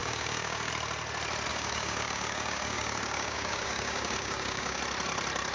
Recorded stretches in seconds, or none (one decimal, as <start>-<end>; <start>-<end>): 0.7-1.5; 4.8-5.5